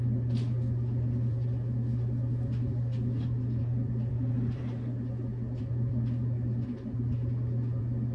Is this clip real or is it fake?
real